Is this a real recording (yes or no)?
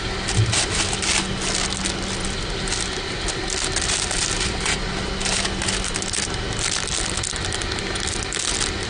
yes